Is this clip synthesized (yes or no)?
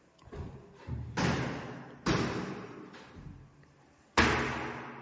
no